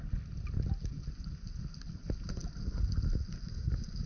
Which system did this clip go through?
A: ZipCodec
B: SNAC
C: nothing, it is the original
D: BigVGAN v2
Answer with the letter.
C